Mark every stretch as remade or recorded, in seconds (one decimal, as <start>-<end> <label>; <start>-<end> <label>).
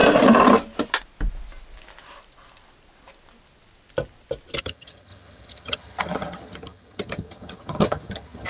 0.0-4.6 recorded; 4.6-8.5 remade